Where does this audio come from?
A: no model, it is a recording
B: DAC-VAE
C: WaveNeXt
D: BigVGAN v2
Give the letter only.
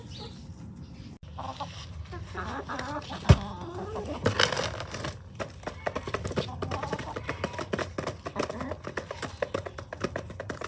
A